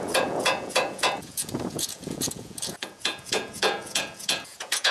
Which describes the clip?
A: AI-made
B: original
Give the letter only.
A